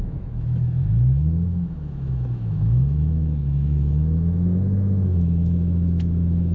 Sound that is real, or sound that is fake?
fake